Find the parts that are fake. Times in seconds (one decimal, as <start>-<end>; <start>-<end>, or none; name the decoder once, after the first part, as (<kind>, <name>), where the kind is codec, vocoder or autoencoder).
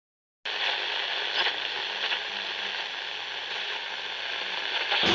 none